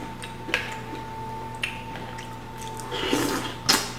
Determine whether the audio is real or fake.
real